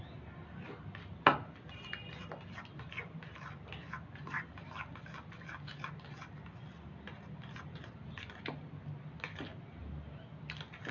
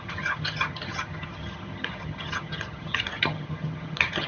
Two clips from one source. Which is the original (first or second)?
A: first